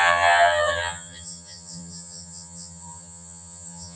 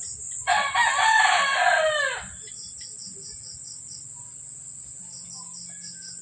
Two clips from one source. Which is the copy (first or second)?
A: first